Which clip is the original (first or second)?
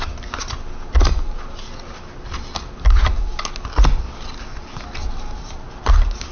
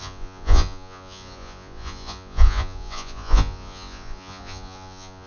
first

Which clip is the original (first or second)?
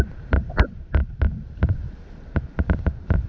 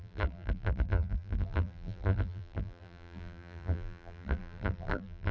first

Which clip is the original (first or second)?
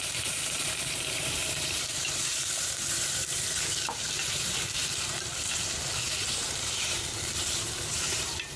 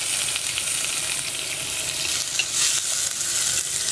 second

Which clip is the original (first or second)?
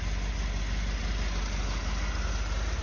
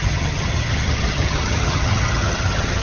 first